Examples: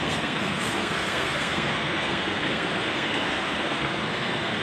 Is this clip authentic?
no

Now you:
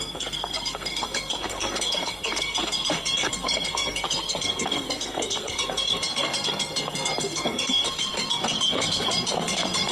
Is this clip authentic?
no